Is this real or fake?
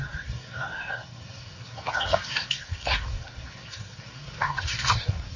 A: fake